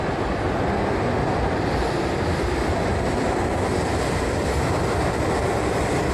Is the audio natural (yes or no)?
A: yes